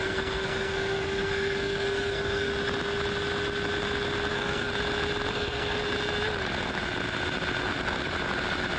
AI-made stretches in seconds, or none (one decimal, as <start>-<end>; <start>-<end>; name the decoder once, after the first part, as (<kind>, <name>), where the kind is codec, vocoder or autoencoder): 0.0-2.5 (codec, SNAC); 4.3-4.7; 5.3-5.8